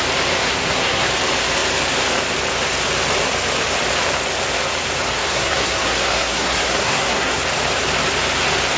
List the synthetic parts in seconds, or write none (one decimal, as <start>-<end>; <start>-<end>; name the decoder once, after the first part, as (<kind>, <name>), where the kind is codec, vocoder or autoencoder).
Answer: 0.4-1.1 (codec, SNAC); 5.2-7.4